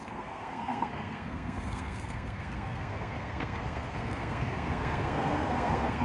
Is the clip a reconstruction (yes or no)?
yes